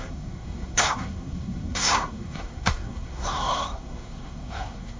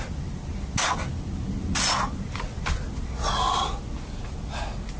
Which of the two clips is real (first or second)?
second